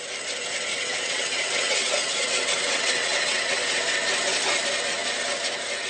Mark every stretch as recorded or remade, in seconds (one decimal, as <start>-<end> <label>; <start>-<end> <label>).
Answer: 0.0-0.7 recorded; 0.7-3.8 remade; 3.8-5.9 recorded